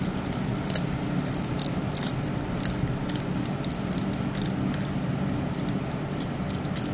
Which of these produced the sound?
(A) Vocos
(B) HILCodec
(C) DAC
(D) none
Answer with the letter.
D